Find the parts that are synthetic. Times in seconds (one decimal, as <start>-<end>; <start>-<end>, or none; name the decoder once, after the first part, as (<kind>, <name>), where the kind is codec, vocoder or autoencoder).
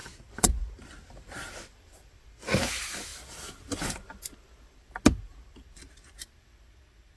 none